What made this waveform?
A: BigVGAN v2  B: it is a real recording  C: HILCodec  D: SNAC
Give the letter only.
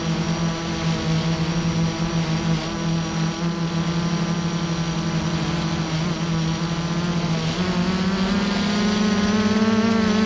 B